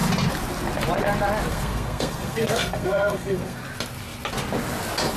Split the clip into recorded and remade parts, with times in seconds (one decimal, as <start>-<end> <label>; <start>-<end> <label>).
0.0-1.5 recorded; 1.5-3.6 remade; 3.6-5.2 recorded